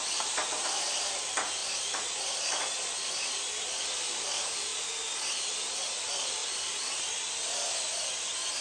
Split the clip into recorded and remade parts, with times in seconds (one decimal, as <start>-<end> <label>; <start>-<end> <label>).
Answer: 0.0-1.6 remade; 1.6-3.5 recorded; 3.5-4.7 remade; 4.7-5.5 recorded; 5.5-8.6 remade